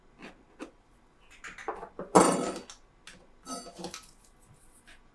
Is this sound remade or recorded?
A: recorded